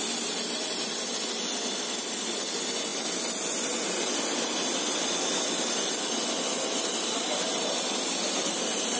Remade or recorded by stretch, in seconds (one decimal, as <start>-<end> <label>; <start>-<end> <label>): 0.0-9.0 recorded